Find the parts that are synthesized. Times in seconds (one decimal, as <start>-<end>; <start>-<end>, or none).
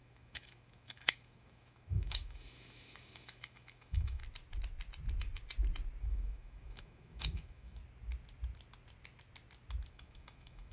0.0-4.2; 6.0-7.8; 9.9-10.7